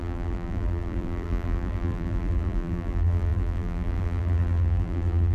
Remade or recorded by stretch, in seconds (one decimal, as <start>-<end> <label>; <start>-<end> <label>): 0.0-5.3 remade